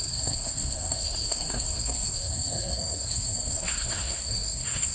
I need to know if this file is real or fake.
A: fake